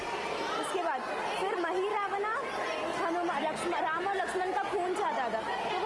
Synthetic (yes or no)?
no